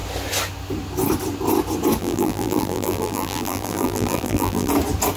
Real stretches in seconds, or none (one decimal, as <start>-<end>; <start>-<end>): 0.0-2.0; 4.7-5.2